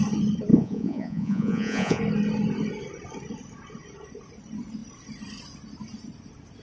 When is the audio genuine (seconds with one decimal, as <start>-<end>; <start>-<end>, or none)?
0.0-0.5; 2.0-6.6